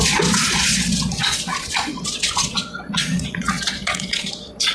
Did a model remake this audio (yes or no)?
yes